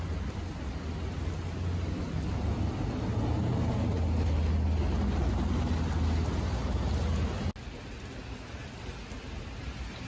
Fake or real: real